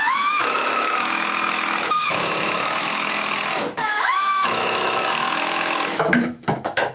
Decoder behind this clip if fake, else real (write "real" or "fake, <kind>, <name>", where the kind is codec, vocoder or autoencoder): fake, autoencoder, DAC-VAE